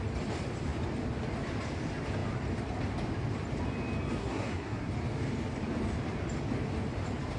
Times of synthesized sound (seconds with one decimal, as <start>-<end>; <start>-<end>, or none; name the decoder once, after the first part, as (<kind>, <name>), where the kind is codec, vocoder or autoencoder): 4.2-4.9 (codec, SNAC)